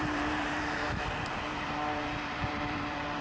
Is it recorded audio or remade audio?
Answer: remade